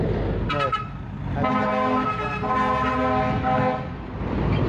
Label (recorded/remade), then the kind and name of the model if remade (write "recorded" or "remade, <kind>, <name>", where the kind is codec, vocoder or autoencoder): recorded